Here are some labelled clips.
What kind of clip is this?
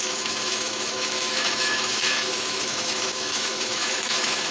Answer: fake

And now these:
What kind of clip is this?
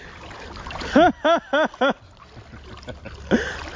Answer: real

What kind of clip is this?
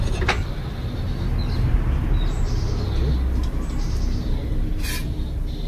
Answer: real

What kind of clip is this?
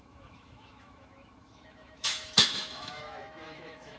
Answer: fake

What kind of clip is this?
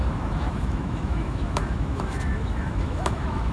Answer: fake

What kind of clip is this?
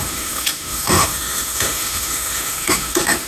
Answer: fake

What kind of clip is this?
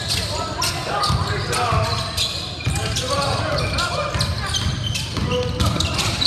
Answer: real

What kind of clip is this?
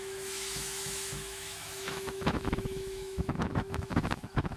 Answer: fake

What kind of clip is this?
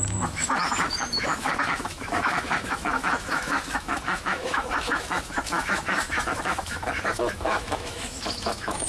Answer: fake